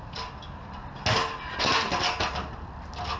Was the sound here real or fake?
real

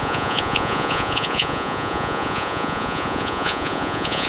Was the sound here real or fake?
fake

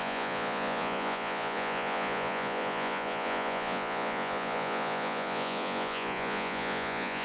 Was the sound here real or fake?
fake